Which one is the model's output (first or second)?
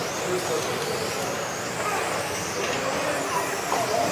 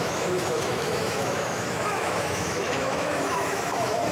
second